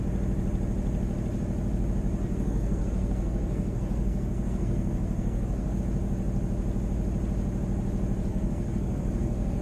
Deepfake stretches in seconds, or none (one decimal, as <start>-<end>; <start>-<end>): 2.2-5.8; 8.3-9.6